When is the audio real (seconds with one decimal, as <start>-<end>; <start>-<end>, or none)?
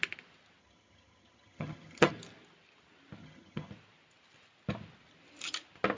0.0-0.6; 2.1-3.2; 3.7-6.0